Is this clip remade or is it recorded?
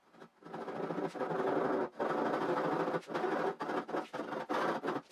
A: recorded